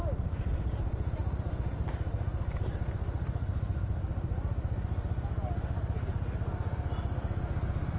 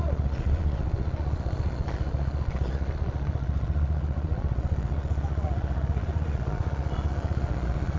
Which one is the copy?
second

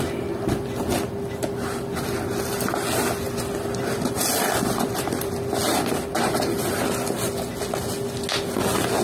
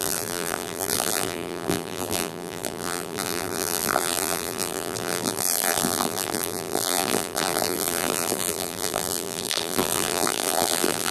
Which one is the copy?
second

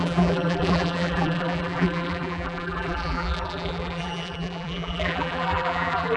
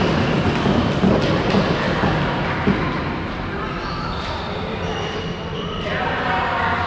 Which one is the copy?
first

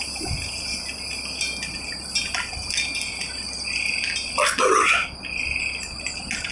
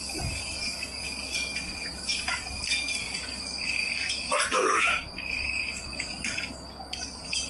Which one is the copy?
second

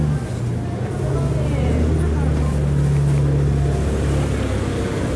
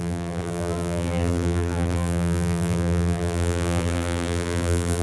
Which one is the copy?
second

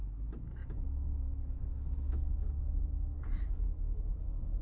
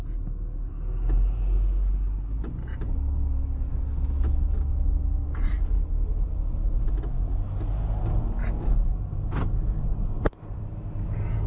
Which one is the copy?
first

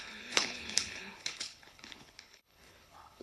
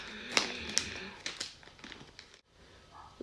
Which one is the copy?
first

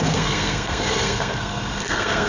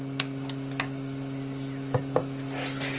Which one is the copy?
first